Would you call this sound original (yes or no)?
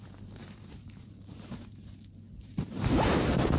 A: no